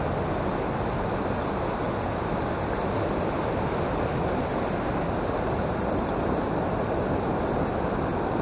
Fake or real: real